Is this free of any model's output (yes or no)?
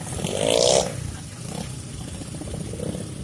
yes